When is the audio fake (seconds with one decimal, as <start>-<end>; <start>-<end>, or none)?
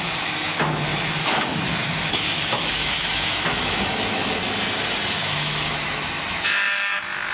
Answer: 0.0-4.4; 5.1-7.3